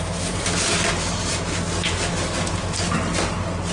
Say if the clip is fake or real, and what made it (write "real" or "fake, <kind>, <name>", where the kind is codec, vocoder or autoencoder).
real